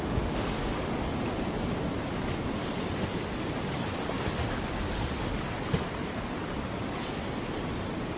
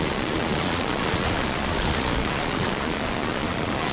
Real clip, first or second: first